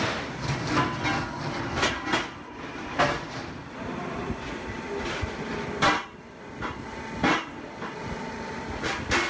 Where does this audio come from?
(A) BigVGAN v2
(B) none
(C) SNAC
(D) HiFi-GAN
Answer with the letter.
B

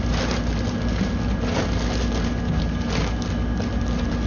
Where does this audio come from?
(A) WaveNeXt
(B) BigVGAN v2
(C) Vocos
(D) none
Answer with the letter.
D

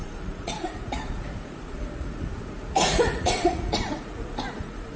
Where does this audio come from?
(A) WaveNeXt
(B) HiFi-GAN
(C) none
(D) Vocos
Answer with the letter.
D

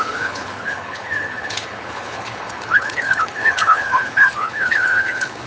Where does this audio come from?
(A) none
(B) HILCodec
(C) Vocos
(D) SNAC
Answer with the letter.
B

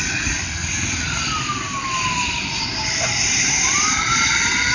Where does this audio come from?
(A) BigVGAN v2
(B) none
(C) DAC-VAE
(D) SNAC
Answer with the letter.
B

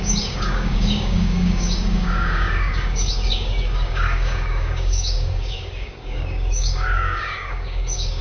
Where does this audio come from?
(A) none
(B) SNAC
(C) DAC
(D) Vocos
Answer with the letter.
C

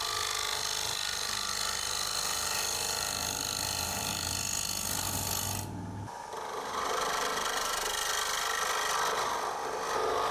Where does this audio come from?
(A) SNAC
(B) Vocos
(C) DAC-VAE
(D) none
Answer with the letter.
D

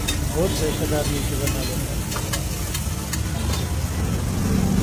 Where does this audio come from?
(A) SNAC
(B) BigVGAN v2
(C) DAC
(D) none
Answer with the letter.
D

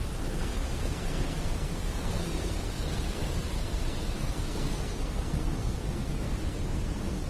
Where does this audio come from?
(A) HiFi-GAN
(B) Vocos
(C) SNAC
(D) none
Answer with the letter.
C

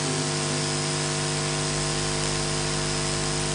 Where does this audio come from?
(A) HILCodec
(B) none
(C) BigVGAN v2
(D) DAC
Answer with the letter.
B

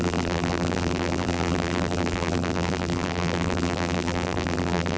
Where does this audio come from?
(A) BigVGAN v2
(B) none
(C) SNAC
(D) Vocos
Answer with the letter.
A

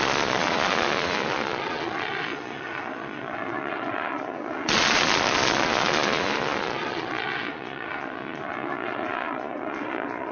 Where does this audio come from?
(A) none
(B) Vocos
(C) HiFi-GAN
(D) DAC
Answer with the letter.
B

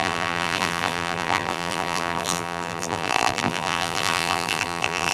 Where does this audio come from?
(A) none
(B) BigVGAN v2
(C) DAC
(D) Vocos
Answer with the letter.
B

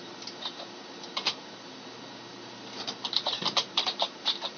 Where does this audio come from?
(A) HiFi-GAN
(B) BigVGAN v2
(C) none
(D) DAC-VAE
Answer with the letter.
B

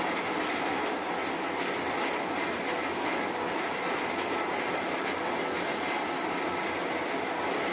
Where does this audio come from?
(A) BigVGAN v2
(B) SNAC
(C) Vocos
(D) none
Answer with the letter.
D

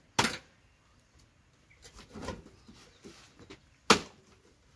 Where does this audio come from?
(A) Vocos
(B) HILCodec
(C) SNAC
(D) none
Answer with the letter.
D